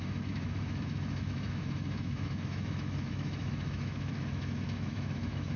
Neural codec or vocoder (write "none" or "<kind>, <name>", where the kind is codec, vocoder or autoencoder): autoencoder, DAC-VAE